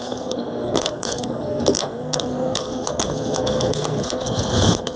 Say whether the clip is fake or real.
fake